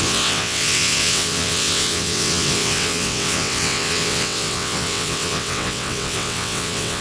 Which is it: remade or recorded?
remade